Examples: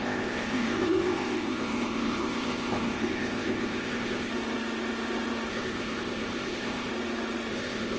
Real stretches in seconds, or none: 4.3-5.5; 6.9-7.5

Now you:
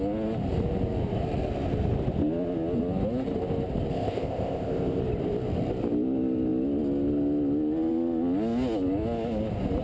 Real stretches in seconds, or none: 0.0-3.9; 5.0-9.8

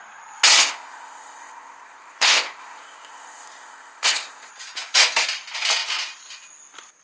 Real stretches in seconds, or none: 0.0-0.6; 4.5-7.0

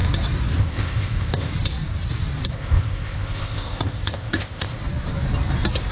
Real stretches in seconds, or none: 0.0-0.6; 1.5-2.5; 4.8-5.9

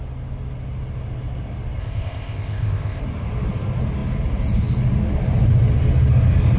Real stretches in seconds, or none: 0.0-1.8; 3.0-6.6

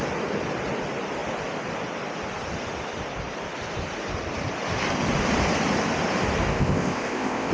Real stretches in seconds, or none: 0.0-6.5

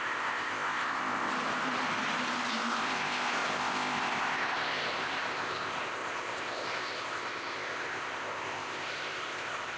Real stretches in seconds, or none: 1.3-2.5

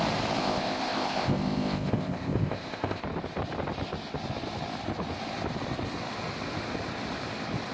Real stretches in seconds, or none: 0.0-0.4; 3.0-7.7